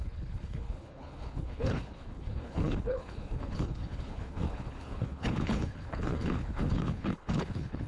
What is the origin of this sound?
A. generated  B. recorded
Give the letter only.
A